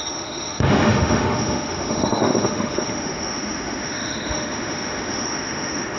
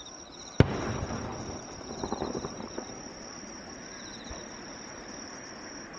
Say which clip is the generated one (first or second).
first